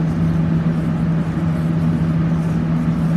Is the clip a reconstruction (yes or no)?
no